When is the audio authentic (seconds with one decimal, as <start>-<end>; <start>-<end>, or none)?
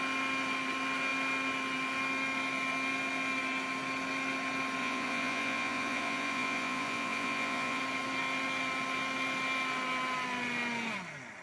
0.0-4.8; 7.8-11.4